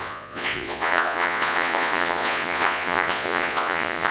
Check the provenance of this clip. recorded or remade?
remade